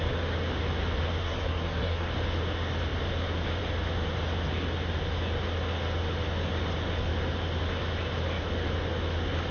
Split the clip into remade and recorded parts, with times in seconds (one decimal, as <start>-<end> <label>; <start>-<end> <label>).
0.0-1.2 recorded; 1.2-2.1 remade; 2.1-9.5 recorded